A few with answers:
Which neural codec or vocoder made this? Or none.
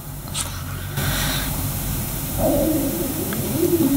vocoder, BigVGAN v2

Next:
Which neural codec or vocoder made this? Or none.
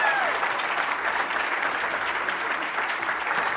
vocoder, BigVGAN v2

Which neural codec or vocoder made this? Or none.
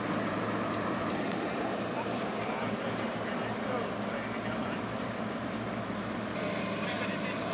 vocoder, BigVGAN v2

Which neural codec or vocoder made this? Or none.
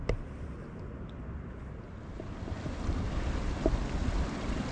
none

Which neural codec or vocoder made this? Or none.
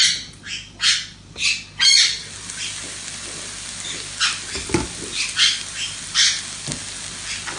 none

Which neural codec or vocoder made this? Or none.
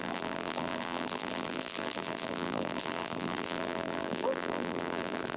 vocoder, BigVGAN v2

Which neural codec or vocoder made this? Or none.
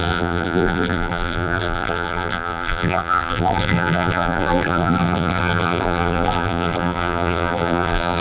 vocoder, BigVGAN v2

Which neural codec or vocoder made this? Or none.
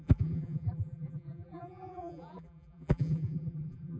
vocoder, BigVGAN v2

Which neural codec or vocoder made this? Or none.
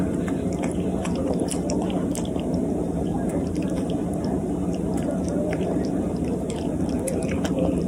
vocoder, BigVGAN v2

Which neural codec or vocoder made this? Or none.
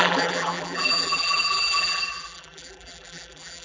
vocoder, BigVGAN v2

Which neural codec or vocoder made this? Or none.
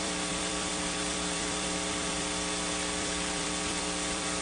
vocoder, BigVGAN v2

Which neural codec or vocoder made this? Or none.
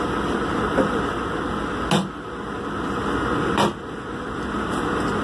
none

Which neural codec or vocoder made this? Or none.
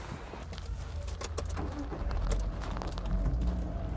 none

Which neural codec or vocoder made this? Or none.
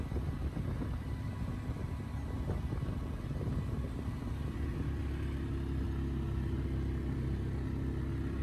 none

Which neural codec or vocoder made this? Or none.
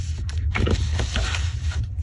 vocoder, BigVGAN v2